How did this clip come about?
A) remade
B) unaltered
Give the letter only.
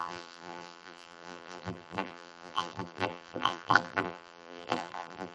A